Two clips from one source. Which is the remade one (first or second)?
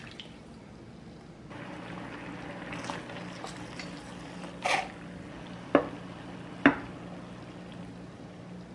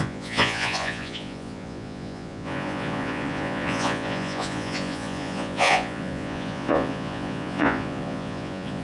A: second